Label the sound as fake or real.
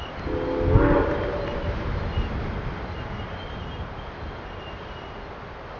real